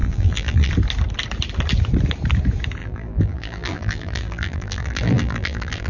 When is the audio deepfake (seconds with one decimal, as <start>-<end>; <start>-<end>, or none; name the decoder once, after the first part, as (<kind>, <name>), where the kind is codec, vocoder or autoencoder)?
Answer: 0.0-0.7 (vocoder, BigVGAN v2); 2.8-5.9